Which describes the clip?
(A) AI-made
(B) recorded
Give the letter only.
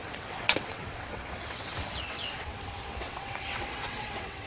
A